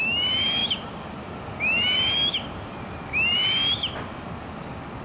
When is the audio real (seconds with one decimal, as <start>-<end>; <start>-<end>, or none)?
0.0-5.0